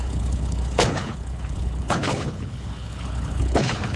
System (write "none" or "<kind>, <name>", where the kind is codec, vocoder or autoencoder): codec, HILCodec